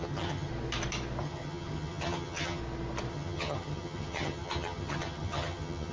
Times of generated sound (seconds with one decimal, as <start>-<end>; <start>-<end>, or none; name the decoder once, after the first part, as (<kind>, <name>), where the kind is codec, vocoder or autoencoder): 0.0-0.5 (vocoder, HiFi-GAN); 1.2-2.6; 3.1-5.9

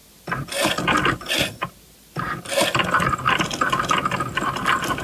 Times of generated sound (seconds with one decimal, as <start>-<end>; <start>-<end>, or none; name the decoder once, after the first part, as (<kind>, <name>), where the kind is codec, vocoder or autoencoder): none

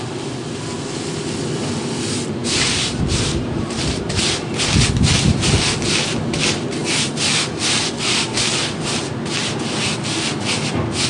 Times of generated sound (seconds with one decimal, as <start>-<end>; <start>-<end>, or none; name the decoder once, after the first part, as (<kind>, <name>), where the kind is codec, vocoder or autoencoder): 2.4-4.2 (vocoder, BigVGAN v2)